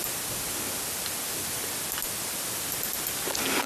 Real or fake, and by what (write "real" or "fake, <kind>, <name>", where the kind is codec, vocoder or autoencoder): real